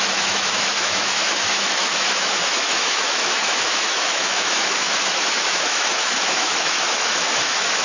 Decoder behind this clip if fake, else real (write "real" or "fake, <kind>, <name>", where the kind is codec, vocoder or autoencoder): fake, autoencoder, DAC-VAE